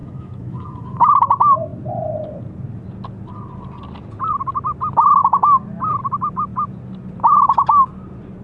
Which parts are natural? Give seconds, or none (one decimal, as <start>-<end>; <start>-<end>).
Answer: 1.1-8.4